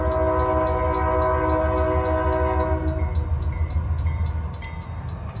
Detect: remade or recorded recorded